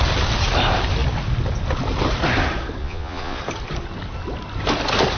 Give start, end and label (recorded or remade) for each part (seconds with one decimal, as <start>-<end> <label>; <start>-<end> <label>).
0.0-2.8 recorded; 2.8-3.4 remade; 3.4-5.2 recorded